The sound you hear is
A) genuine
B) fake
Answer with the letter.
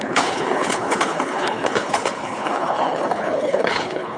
B